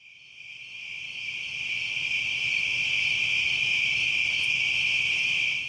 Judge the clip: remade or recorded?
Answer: recorded